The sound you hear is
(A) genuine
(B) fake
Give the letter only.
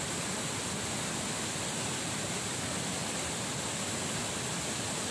A